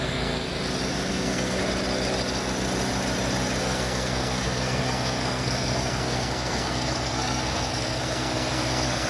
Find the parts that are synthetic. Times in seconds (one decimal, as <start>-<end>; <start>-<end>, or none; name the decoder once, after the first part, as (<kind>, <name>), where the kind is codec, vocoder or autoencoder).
0.0-0.5 (codec, SNAC); 1.1-1.6; 3.6-9.1